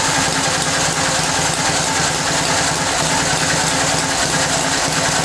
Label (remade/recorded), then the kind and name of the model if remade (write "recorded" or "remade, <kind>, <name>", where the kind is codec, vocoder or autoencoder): recorded